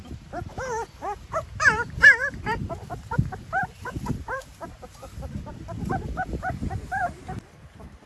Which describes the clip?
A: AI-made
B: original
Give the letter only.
A